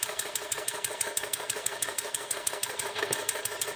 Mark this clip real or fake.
fake